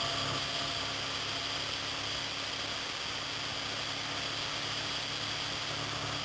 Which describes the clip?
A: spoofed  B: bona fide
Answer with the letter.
B